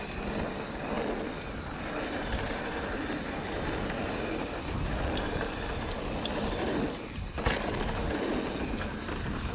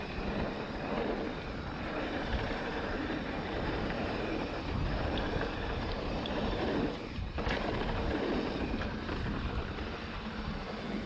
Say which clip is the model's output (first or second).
second